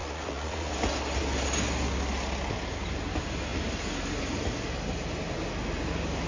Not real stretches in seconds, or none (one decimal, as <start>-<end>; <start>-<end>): 0.0-0.7